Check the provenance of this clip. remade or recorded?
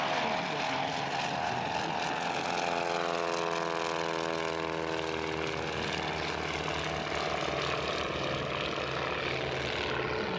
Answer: recorded